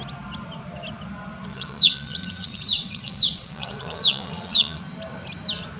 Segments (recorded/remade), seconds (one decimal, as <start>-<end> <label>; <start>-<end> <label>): 0.0-1.5 recorded; 1.5-4.8 remade; 4.8-5.8 recorded